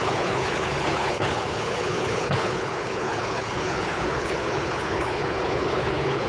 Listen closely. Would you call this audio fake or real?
fake